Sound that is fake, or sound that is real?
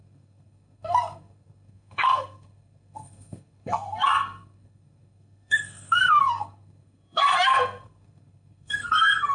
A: fake